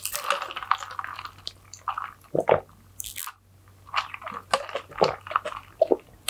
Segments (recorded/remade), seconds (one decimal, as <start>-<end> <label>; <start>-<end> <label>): 0.0-6.3 recorded